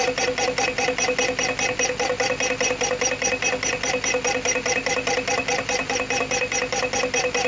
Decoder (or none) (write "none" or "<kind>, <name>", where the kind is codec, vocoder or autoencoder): none